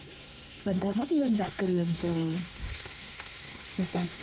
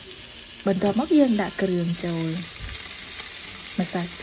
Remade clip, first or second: first